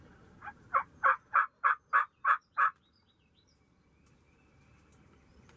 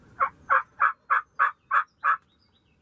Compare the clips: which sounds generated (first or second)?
first